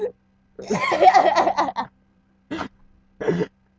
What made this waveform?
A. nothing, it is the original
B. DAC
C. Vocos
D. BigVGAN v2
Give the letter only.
A